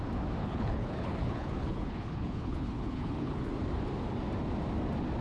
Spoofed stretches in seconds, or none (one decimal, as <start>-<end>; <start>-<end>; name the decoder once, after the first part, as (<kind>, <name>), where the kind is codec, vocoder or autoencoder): 0.4-3.5 (codec, HILCodec)